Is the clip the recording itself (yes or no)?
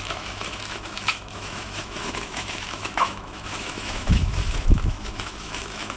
no